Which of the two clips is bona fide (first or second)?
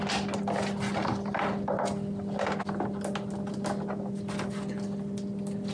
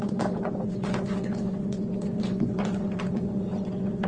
first